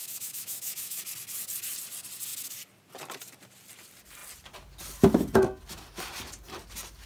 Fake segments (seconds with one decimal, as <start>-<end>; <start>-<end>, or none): 0.0-1.0